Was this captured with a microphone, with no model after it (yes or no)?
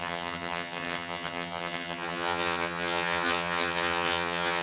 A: no